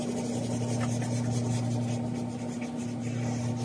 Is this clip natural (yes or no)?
yes